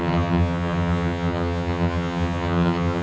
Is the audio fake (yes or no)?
yes